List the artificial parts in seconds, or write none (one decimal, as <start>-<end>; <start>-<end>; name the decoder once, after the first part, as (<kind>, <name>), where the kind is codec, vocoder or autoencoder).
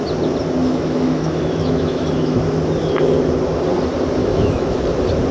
0.6-2.4 (autoencoder, DAC-VAE); 4.2-4.8